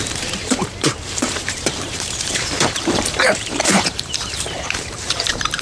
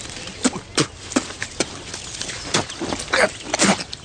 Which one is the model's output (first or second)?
first